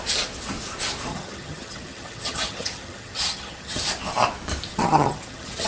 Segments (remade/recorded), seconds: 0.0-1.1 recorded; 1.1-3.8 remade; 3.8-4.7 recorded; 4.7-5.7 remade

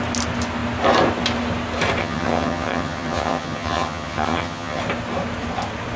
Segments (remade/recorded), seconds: 0.0-2.0 recorded; 2.0-4.8 remade; 4.8-6.0 recorded

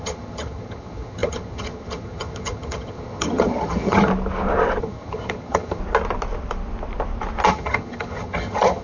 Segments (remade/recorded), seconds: 0.0-4.1 remade; 4.1-4.8 recorded; 4.8-5.8 remade; 5.8-7.5 recorded; 7.5-8.8 remade